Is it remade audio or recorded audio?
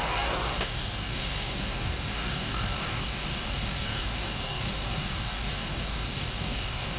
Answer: remade